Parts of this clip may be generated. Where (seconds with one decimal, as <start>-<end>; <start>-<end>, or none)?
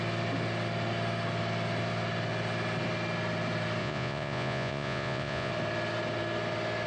3.8-5.5